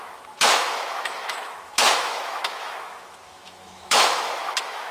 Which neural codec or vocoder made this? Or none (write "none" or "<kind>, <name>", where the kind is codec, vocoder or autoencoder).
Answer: autoencoder, DAC-VAE